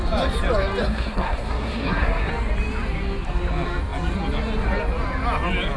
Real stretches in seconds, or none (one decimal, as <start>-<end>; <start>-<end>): 0.0-0.8; 2.3-5.8